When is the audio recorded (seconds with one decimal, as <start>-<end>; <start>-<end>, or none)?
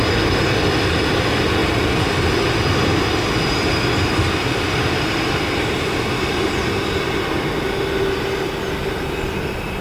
0.0-9.8